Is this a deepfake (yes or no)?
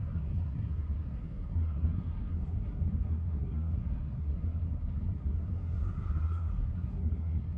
yes